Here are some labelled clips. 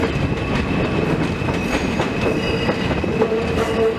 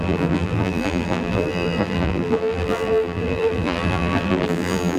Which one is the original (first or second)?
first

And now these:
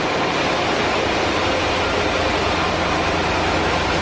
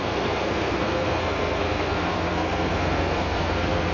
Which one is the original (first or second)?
first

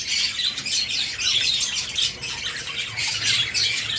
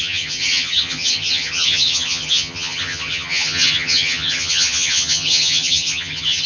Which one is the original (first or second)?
first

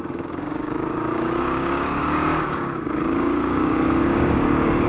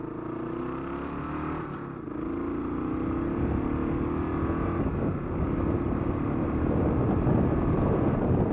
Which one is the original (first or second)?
second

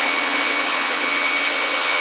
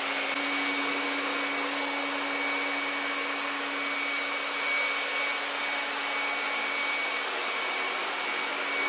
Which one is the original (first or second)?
second